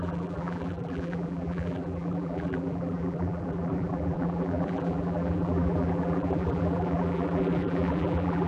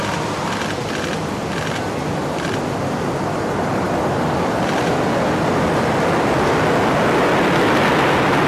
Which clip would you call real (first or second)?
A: second